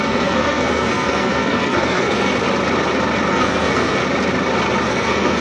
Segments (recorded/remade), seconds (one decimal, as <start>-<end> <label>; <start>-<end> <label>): 0.0-2.3 remade; 2.3-3.3 recorded; 3.3-4.0 remade; 4.0-4.9 recorded; 4.9-5.4 remade